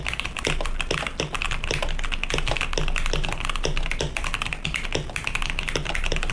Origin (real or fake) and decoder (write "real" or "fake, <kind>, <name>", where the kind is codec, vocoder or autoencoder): real